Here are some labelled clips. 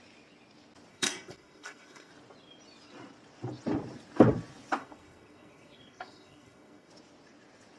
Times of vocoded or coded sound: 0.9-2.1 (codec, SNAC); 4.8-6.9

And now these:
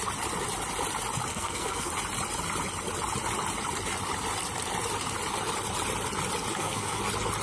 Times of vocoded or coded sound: 1.3-1.9 (codec, SNAC); 6.5-7.0

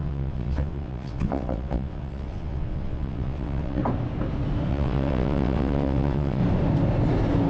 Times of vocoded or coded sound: 0.0-3.8 (vocoder, WaveNeXt); 4.7-6.4

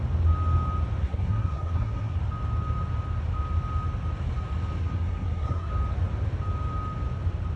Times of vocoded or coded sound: 1.0-2.2 (codec, SNAC); 4.8-5.7

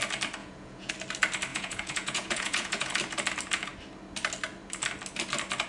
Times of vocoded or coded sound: 0.4-0.9 (vocoder, Vocos); 1.5-2.9

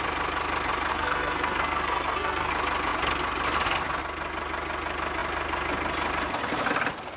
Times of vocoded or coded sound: 0.9-2.5 (codec, SNAC)